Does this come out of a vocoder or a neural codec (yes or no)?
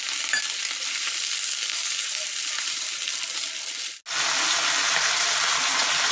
no